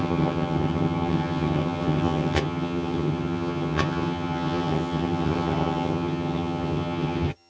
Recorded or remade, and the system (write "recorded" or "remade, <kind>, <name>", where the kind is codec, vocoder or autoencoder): remade, vocoder, HiFi-GAN